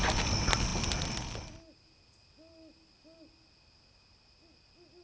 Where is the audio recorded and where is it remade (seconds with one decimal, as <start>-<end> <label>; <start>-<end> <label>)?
0.0-5.0 recorded